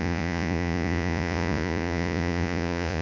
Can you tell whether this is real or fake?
fake